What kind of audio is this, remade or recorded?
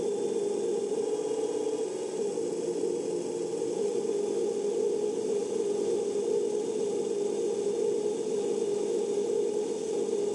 recorded